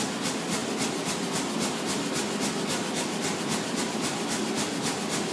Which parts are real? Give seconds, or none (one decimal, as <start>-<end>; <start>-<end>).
0.0-5.3